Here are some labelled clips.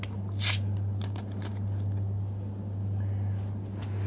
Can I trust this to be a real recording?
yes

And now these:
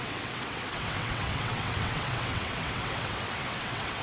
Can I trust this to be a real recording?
no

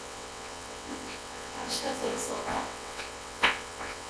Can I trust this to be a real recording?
no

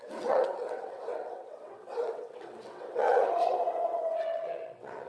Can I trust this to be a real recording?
no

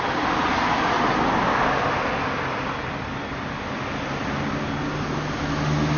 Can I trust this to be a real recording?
yes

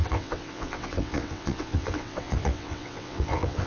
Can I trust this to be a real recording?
no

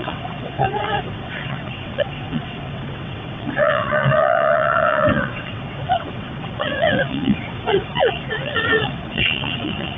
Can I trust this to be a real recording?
no